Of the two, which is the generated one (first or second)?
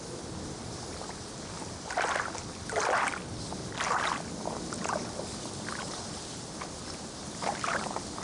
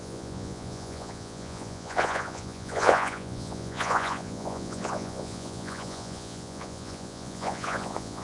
second